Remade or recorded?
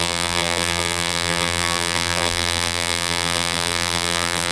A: remade